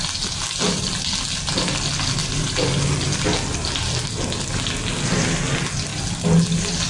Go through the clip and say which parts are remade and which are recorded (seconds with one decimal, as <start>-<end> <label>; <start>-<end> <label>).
0.0-6.9 recorded